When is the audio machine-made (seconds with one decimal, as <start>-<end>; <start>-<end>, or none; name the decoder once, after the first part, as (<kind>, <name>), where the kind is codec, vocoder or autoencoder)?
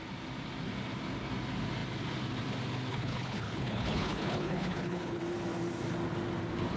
2.9-5.2 (codec, HILCodec)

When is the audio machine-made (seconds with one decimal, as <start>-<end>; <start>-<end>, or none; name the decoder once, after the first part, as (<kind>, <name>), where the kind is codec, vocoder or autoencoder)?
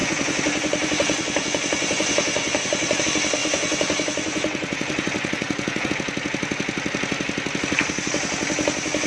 0.0-3.0 (vocoder, Vocos); 3.4-5.9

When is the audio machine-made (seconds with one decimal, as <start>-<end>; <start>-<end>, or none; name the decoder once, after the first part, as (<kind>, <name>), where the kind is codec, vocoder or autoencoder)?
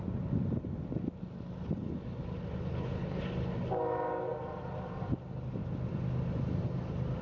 2.7-3.2 (codec, HILCodec)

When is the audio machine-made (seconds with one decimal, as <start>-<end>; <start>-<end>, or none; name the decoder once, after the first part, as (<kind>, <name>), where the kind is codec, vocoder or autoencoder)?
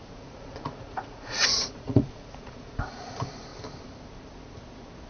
0.0-3.1 (vocoder, Vocos)